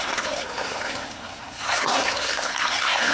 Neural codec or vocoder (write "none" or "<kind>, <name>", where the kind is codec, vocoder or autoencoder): codec, SNAC